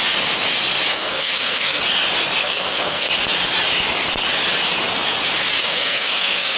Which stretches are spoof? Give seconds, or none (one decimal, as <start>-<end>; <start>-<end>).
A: 0.9-1.8; 2.4-3.1; 5.6-6.6